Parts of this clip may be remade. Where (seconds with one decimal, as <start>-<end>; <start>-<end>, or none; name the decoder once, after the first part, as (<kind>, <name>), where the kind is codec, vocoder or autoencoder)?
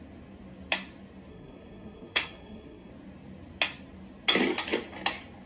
1.3-2.9 (codec, SNAC)